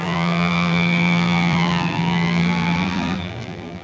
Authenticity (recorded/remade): remade